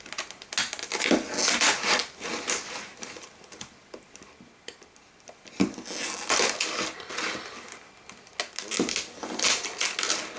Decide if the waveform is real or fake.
real